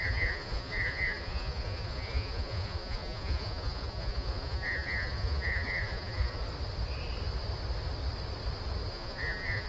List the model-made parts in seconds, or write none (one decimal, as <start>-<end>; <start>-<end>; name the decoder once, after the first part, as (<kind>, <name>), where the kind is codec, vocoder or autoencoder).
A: 0.0-6.4 (vocoder, Vocos); 8.9-9.7